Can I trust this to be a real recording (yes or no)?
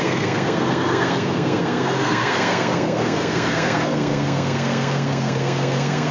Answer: no